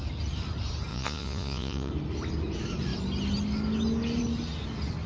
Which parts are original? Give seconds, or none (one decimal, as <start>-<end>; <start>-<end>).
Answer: 0.0-0.9; 1.9-5.1